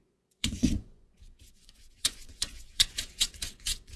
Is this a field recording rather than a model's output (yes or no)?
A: no